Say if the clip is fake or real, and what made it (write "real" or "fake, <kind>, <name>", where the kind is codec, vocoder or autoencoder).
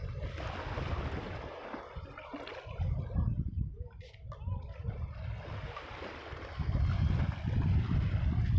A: real